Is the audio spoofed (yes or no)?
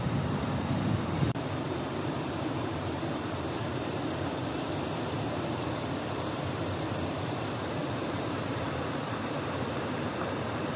yes